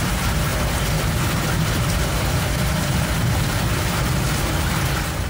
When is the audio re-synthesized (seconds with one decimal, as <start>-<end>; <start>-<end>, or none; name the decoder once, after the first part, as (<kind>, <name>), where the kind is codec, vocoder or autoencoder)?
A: 2.1-4.7 (vocoder, BigVGAN v2)